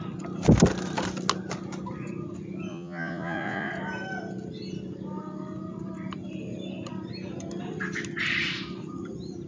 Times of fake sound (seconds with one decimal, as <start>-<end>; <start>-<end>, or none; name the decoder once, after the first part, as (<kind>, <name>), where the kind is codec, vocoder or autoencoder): 2.7-3.7 (vocoder, Vocos)